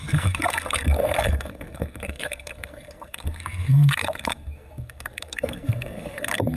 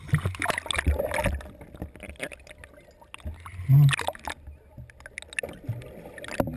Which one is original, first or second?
second